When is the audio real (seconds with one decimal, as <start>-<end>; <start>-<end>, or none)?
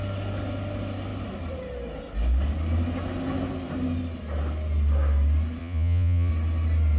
0.0-5.6; 6.3-7.0